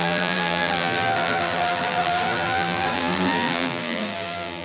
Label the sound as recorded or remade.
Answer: remade